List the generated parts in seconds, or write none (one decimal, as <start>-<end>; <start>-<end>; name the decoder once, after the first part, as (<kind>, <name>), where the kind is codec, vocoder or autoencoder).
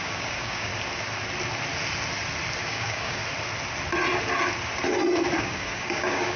0.0-0.7 (codec, DAC); 2.6-3.2; 5.4-6.4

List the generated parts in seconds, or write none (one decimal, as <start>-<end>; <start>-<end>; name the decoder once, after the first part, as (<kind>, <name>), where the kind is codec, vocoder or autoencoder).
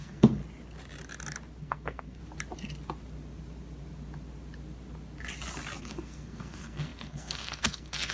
0.0-0.4 (codec, SNAC); 1.6-2.2; 5.8-8.1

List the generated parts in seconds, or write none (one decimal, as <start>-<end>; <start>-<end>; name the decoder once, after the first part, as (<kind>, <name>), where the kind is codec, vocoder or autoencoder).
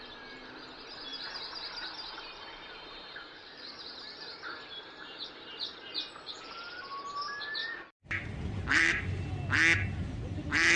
1.1-6.1 (vocoder, BigVGAN v2); 7.6-9.3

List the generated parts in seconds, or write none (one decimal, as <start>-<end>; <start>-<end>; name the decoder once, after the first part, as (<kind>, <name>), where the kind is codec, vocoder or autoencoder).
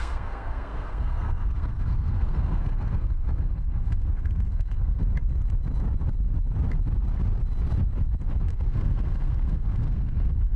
0.0-5.0 (codec, SNAC); 8.4-10.6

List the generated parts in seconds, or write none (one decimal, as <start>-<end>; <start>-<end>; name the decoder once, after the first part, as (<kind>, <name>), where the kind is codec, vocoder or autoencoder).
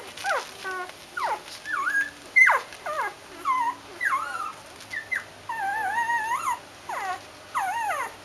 none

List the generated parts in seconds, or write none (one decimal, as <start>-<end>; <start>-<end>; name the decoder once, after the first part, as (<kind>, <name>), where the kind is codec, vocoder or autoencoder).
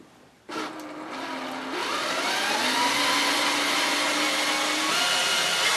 1.8-2.5 (vocoder, BigVGAN v2)